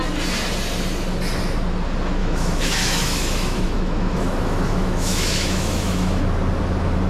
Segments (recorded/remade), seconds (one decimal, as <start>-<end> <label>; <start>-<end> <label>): 0.0-2.2 recorded; 2.2-6.2 remade; 6.2-7.1 recorded